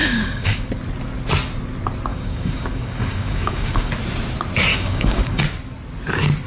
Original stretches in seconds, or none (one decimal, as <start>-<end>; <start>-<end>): 0.7-2.1; 3.9-4.7; 5.4-6.5